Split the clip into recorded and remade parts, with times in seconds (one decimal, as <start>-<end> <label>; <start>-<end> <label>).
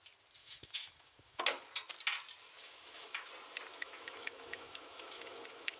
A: 0.0-0.4 recorded; 0.4-1.4 remade; 1.4-2.6 recorded; 2.6-3.3 remade; 3.3-3.7 recorded; 3.7-5.8 remade